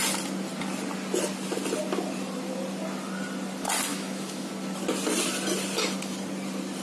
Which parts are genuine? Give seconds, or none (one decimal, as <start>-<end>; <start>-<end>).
0.0-3.9; 4.5-6.8